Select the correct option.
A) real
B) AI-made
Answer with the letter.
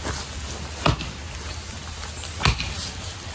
A